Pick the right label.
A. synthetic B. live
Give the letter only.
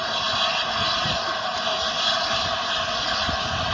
B